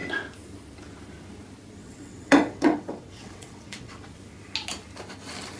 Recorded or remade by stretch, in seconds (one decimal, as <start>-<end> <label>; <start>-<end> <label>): 0.0-1.8 recorded; 1.8-4.1 remade; 4.1-5.6 recorded